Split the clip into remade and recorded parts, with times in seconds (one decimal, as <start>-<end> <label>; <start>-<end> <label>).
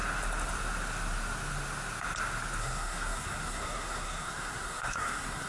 0.0-2.6 recorded; 2.6-5.5 remade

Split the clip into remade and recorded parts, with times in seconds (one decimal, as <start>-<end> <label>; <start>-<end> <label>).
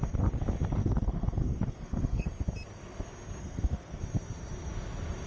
0.0-0.8 recorded; 0.8-2.3 remade; 2.3-3.4 recorded; 3.4-4.0 remade; 4.0-5.3 recorded